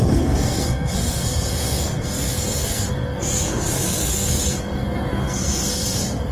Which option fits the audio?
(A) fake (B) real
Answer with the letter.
A